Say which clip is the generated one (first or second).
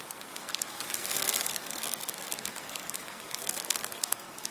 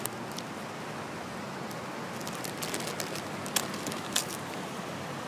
first